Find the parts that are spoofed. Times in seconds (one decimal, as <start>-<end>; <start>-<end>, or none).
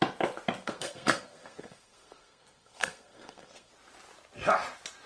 0.6-3.7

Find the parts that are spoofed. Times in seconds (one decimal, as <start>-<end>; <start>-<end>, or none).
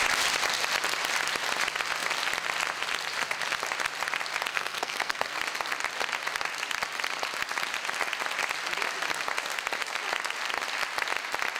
4.5-5.4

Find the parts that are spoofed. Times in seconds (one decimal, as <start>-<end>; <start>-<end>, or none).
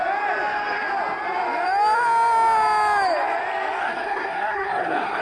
3.8-5.2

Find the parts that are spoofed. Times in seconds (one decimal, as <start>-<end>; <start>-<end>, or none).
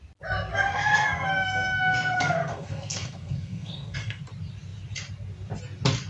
0.5-4.2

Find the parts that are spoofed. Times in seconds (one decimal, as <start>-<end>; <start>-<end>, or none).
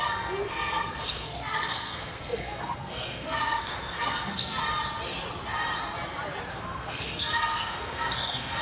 0.0-4.6; 6.5-8.6